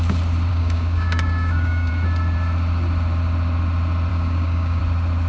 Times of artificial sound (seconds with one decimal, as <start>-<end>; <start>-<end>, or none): 0.5-1.9; 4.1-4.8